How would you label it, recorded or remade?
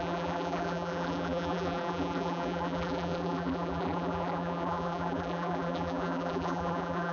remade